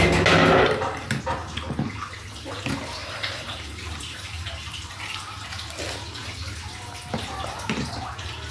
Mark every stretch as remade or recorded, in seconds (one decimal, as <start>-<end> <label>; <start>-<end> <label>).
0.0-3.0 recorded; 3.0-5.8 remade; 5.8-8.5 recorded